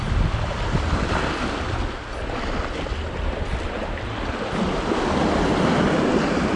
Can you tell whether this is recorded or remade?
recorded